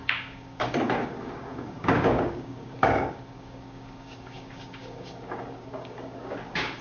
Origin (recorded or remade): remade